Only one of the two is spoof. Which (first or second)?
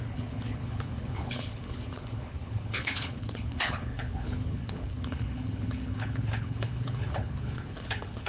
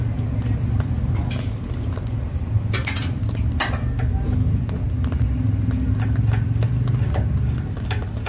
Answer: first